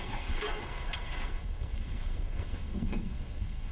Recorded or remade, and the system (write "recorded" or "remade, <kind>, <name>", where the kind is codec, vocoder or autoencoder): remade, codec, SNAC